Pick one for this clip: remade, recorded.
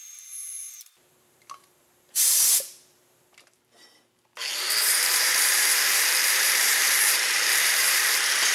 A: remade